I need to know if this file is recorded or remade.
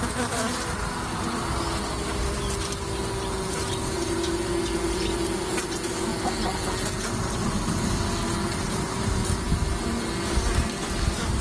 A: recorded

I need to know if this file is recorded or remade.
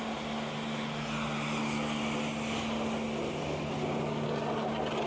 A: recorded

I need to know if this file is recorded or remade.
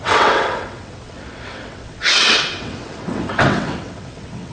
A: remade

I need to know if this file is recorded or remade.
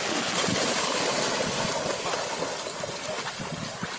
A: recorded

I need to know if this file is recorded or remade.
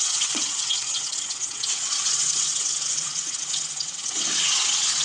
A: remade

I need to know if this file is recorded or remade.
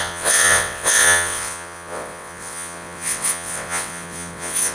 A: remade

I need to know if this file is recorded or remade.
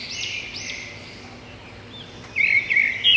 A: recorded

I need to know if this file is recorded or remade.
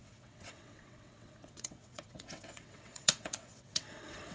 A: remade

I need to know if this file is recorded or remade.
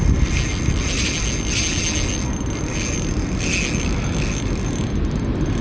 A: recorded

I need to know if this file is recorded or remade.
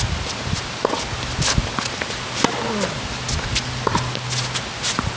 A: recorded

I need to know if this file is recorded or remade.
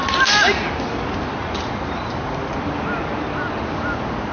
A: recorded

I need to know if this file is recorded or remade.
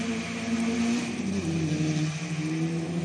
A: recorded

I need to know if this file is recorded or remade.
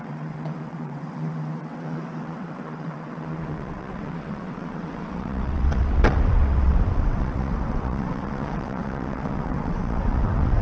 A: remade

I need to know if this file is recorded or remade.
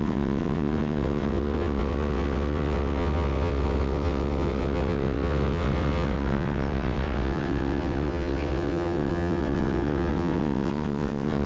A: remade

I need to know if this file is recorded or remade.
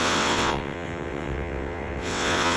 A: remade